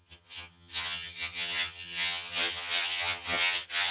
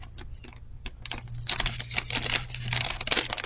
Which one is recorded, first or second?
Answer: second